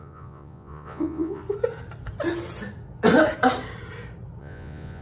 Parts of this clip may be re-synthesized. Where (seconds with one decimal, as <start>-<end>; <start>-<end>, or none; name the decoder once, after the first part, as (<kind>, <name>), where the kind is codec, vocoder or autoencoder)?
0.0-1.4 (vocoder, Vocos); 4.4-5.0